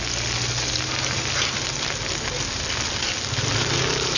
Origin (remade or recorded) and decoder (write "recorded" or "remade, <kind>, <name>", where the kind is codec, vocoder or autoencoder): recorded